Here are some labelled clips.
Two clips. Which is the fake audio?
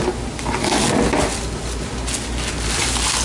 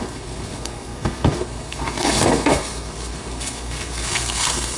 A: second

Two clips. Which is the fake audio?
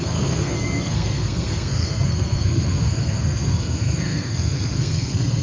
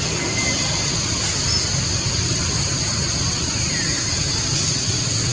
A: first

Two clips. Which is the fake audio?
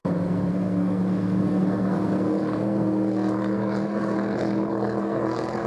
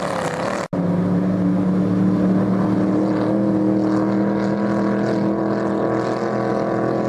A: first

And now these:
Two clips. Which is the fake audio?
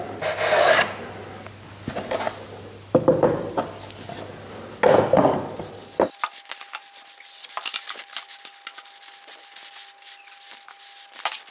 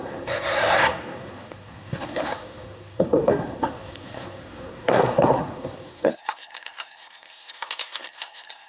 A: second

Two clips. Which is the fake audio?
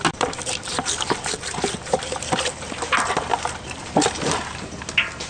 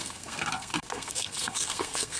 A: second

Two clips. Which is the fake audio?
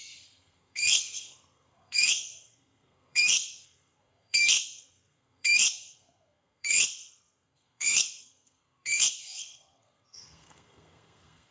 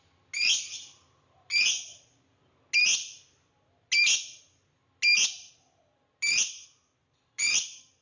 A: first